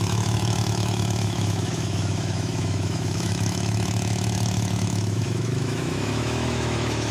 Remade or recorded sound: remade